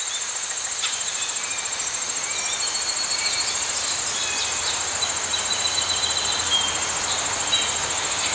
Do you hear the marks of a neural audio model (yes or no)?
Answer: no